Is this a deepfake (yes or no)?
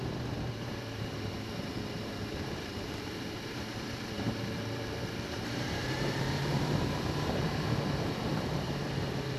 yes